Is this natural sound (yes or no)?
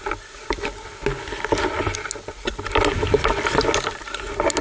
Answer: yes